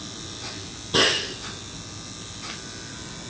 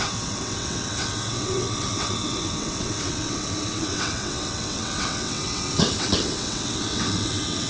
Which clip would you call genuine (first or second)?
first